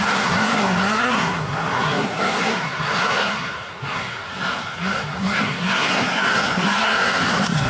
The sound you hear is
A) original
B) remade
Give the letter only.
B